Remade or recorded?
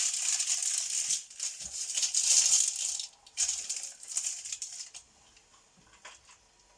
recorded